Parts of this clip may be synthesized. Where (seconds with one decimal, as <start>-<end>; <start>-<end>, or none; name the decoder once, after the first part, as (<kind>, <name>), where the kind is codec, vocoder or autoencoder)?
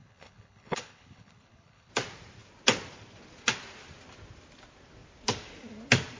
0.0-1.9 (codec, HILCodec)